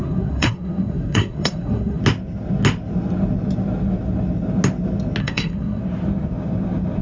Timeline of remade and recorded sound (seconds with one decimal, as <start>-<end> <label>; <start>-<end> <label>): 0.0-2.0 remade; 2.0-5.2 recorded; 5.2-5.8 remade; 5.8-7.0 recorded

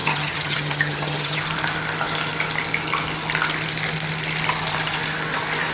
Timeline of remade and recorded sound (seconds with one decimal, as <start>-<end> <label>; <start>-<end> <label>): 0.0-1.4 remade; 1.4-5.7 recorded

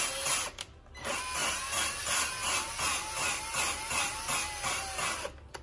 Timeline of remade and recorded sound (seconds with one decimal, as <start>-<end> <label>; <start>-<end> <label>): 0.0-5.6 recorded

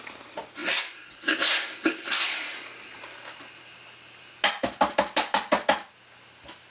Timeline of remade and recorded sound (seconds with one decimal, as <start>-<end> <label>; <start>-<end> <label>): 0.0-6.7 recorded

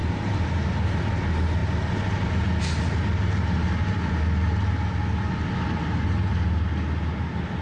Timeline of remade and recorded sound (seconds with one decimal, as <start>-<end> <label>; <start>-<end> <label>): 0.0-7.6 recorded

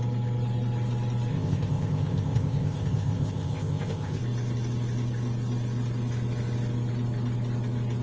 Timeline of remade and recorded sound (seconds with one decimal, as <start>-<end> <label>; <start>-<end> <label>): 0.0-1.3 recorded; 1.3-4.2 remade; 4.2-8.0 recorded